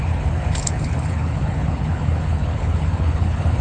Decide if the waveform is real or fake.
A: fake